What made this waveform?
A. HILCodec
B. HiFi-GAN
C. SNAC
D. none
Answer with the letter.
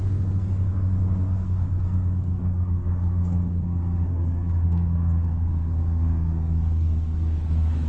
C